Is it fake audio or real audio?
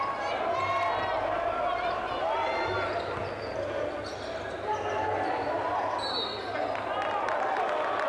real